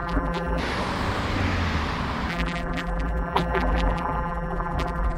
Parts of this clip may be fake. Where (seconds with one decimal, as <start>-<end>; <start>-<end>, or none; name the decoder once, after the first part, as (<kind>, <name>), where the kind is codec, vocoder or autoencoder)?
0.0-0.6 (vocoder, BigVGAN v2); 2.3-5.2